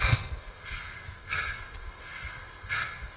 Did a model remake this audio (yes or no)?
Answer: yes